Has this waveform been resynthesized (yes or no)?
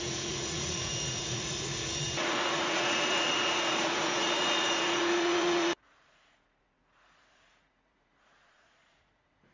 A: yes